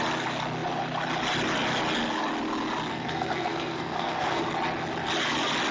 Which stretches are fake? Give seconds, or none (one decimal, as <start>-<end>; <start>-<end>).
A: 2.9-4.4